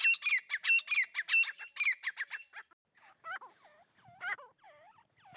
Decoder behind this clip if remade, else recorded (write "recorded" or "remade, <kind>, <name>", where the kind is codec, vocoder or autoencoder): recorded